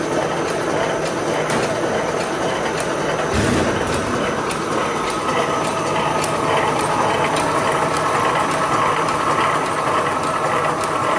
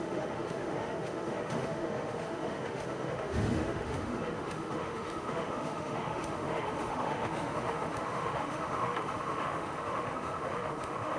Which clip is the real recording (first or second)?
first